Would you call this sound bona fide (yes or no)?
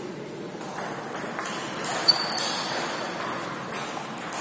yes